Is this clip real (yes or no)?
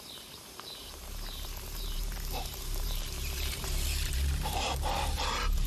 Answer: no